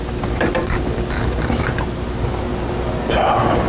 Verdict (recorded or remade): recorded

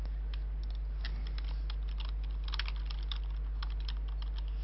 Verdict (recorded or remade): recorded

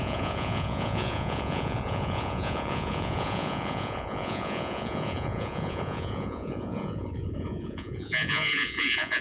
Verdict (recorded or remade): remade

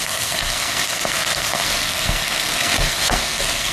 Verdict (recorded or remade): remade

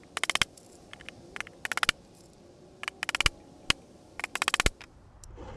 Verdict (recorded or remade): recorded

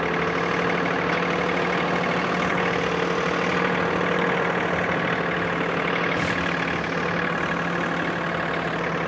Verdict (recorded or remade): recorded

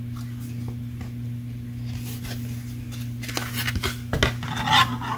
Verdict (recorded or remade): recorded